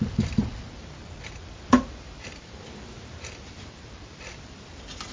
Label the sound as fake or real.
real